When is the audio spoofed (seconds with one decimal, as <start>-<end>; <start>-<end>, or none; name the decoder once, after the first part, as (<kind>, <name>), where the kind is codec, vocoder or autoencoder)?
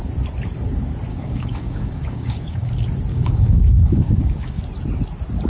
1.1-2.7 (codec, DAC); 3.1-4.6